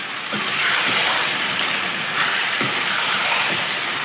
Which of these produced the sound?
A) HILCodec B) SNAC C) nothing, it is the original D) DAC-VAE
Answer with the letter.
C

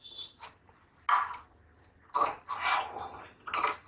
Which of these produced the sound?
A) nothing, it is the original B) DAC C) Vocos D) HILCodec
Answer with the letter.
A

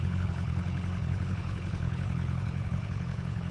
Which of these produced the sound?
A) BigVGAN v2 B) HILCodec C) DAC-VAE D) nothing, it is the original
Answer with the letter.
B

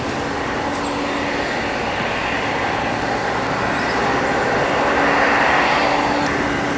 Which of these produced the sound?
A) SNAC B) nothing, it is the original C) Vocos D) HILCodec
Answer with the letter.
B